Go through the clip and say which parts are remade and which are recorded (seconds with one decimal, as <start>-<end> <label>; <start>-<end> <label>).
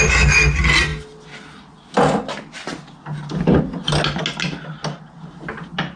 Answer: 0.0-6.0 recorded